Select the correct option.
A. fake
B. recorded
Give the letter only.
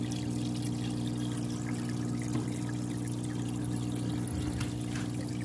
B